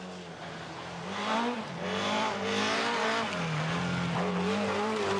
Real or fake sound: real